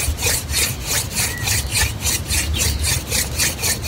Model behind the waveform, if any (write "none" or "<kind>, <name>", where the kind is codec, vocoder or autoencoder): none